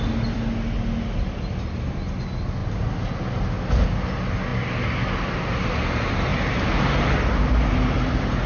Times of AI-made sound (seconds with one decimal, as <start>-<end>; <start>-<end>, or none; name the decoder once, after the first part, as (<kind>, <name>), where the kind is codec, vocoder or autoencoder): none